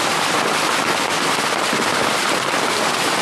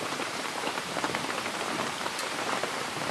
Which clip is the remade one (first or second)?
second